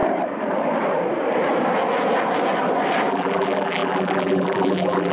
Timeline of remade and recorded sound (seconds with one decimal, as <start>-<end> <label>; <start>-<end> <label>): 0.0-3.1 recorded; 3.1-5.1 remade